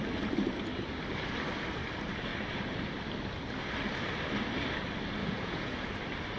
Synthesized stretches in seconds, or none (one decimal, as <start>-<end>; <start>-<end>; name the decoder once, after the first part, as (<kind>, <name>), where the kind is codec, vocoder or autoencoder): 5.2-5.9 (vocoder, Vocos)